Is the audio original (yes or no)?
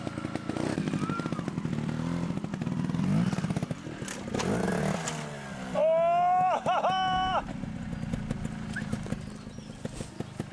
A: yes